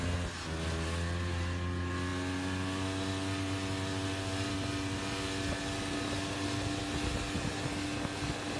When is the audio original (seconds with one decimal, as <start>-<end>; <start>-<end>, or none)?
0.0-8.6